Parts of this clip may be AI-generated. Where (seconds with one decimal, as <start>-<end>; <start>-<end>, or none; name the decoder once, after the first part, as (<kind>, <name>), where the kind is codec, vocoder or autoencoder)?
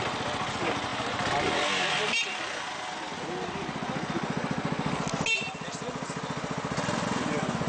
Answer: none